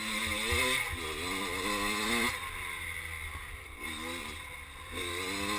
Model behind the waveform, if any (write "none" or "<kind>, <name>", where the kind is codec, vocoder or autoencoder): none